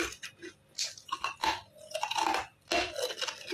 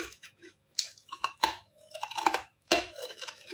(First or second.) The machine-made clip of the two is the second